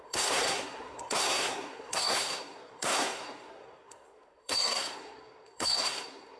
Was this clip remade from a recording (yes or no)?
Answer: yes